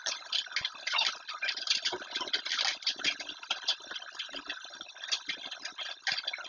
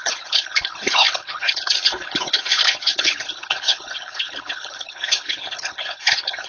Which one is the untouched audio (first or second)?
first